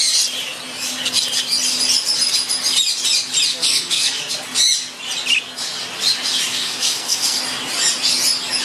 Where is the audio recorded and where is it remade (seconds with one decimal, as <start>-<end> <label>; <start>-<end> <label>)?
0.0-3.5 recorded; 3.5-4.2 remade; 4.2-6.5 recorded; 6.5-7.4 remade; 7.4-8.6 recorded